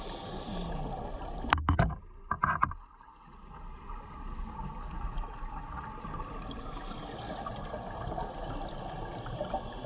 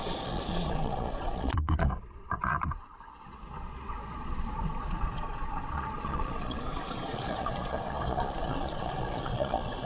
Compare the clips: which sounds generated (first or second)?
second